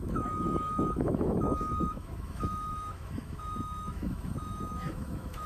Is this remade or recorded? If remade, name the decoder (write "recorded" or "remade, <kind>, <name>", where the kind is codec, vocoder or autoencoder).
remade, autoencoder, DAC-VAE